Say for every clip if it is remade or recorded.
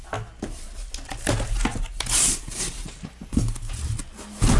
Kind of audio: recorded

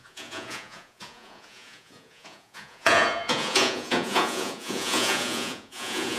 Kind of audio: remade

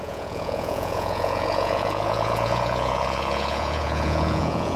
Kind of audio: remade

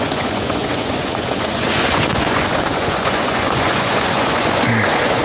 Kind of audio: remade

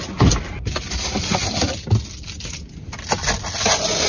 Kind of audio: recorded